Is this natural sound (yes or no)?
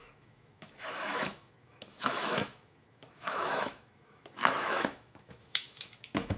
no